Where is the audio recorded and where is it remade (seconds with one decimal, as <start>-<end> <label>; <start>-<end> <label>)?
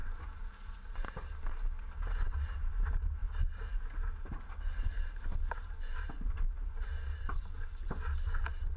0.0-8.8 recorded